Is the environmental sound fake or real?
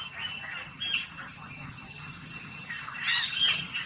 real